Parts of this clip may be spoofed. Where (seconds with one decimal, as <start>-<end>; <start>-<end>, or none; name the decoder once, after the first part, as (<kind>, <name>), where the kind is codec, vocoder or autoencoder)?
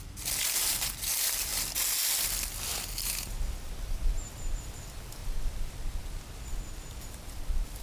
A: none